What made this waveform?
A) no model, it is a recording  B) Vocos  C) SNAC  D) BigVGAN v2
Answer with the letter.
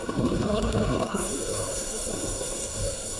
C